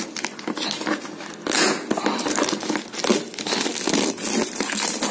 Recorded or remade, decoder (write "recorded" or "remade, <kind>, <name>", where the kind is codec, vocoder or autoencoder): recorded